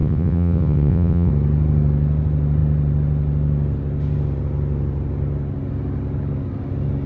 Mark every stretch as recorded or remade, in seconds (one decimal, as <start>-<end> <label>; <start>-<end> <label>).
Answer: 0.0-1.3 remade; 1.3-7.1 recorded